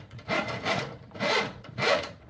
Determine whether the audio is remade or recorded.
remade